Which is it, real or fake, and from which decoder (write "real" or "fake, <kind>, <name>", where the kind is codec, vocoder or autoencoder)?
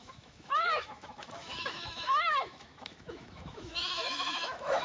fake, autoencoder, DAC-VAE